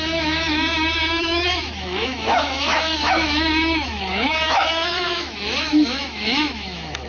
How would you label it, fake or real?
fake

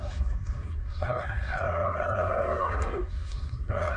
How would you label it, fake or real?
fake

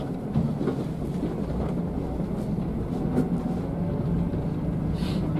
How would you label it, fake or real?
real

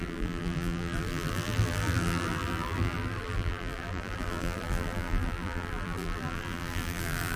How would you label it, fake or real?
fake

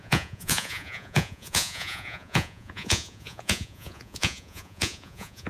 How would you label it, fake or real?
fake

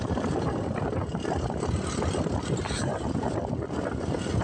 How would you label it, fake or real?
real